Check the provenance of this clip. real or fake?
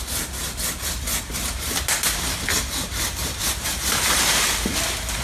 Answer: real